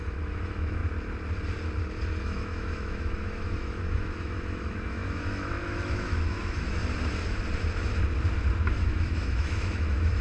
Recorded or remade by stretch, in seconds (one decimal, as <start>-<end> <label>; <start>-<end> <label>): 0.0-0.8 remade; 0.8-2.2 recorded; 2.2-6.8 remade; 6.8-8.7 recorded; 8.7-10.2 remade